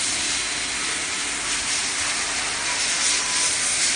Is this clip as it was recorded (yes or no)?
yes